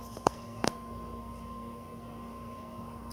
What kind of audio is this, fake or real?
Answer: fake